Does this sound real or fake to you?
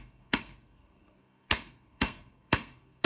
fake